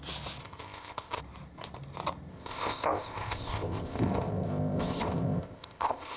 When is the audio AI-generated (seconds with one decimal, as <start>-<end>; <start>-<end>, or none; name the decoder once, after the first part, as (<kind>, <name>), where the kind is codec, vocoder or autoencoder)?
0.4-1.2 (codec, ZipCodec); 2.3-6.2